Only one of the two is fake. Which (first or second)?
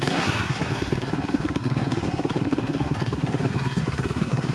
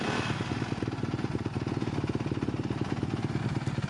first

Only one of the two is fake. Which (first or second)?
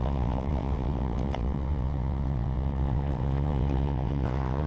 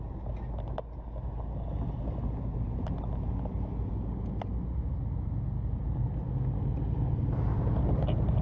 first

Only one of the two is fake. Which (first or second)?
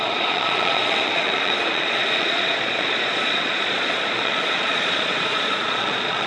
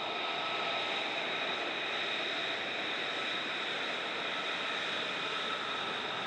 first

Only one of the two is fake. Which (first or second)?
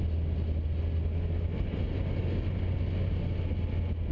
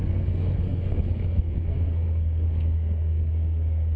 second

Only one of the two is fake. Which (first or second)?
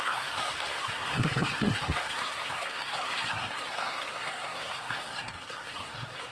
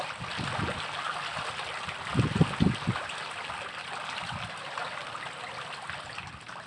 first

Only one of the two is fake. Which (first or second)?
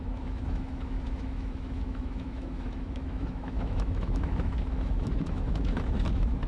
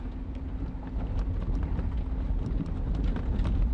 first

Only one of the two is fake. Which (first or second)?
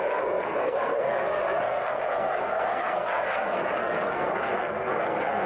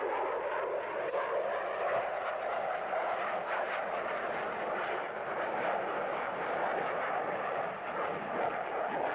first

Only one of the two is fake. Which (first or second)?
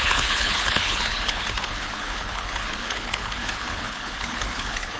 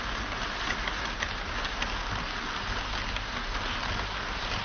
first